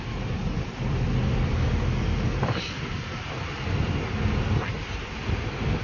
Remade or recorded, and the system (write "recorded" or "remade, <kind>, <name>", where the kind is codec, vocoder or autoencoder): recorded